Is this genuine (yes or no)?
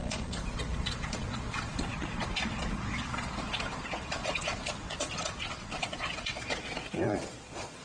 no